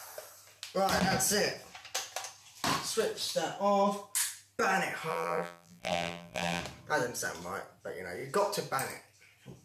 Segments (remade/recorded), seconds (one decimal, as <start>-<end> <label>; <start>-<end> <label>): 0.0-5.1 recorded; 5.1-6.6 remade; 6.6-9.6 recorded